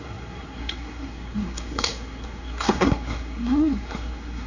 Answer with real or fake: fake